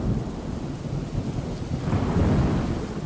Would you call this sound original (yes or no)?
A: yes